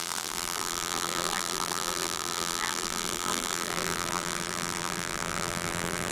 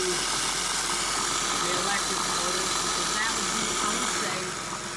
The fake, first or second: first